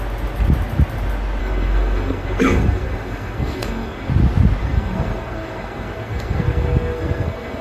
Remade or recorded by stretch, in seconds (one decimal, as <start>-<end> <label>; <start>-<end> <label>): 0.0-1.4 recorded; 1.4-4.1 remade; 4.1-4.6 recorded; 4.6-7.6 remade